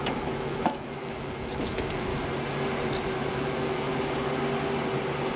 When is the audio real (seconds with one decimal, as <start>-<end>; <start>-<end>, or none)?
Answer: 2.1-3.3; 3.9-5.4